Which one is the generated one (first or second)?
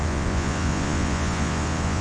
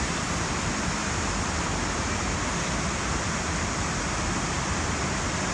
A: first